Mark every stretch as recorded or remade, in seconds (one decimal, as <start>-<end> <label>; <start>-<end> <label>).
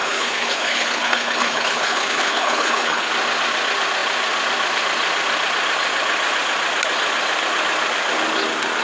0.0-3.1 remade; 3.1-8.8 recorded